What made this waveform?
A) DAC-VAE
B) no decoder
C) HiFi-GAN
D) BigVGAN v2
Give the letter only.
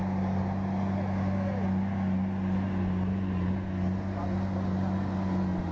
B